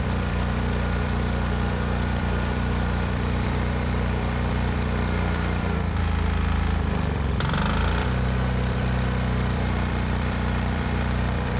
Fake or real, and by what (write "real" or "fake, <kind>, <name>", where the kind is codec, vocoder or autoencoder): fake, vocoder, BigVGAN v2